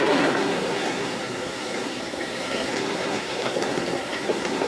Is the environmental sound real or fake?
fake